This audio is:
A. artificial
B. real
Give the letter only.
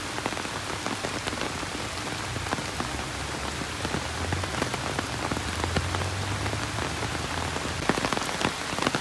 B